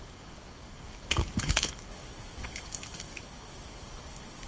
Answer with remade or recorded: remade